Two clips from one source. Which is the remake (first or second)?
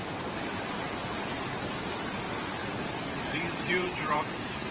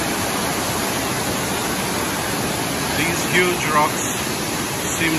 first